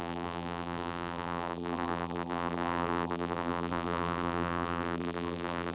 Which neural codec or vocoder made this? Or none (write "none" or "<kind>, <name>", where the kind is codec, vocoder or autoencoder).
vocoder, BigVGAN v2